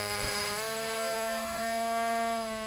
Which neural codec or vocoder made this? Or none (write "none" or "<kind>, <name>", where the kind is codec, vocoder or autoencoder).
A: autoencoder, DAC-VAE